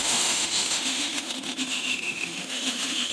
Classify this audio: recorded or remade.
remade